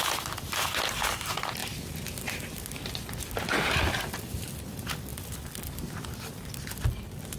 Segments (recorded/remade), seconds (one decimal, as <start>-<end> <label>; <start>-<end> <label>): 0.0-7.4 recorded